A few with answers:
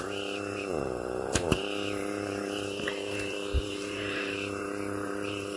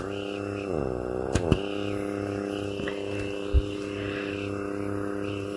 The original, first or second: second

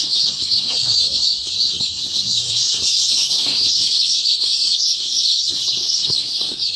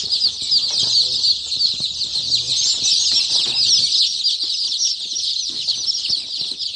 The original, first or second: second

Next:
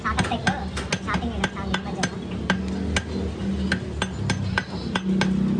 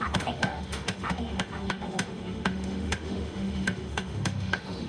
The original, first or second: first